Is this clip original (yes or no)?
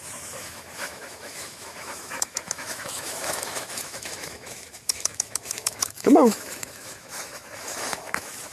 no